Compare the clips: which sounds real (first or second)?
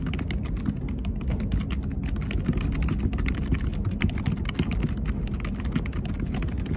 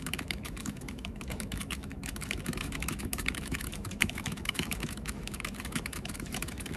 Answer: first